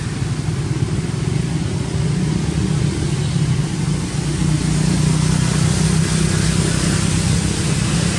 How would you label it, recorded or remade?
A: recorded